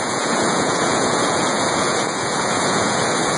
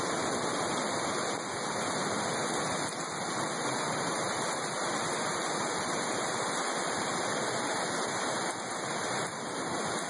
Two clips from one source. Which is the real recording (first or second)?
second